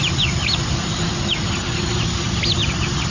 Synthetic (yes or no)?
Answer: no